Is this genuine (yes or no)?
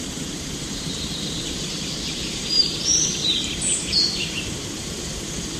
no